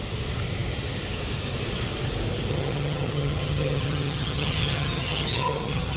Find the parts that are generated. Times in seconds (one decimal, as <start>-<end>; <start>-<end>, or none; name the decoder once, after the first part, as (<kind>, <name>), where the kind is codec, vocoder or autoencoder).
2.5-6.0 (vocoder, HiFi-GAN)